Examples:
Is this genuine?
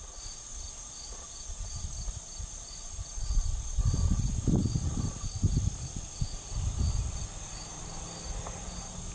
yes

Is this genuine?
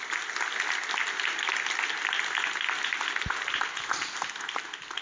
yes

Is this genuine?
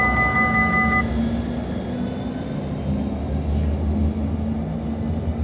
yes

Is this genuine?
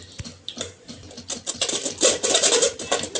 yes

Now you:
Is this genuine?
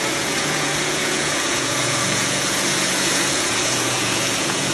no